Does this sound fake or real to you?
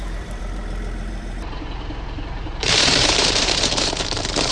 fake